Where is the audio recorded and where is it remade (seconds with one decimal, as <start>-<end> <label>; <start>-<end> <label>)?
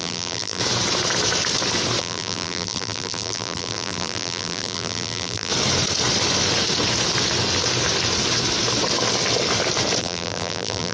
0.0-0.6 remade; 0.6-2.0 recorded; 2.0-5.5 remade; 5.5-10.0 recorded; 10.0-10.9 remade